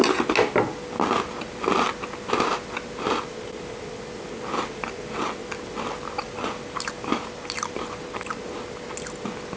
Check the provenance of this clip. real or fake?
real